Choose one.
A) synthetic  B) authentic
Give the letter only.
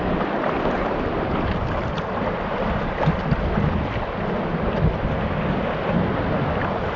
B